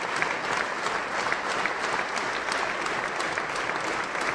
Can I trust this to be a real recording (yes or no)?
yes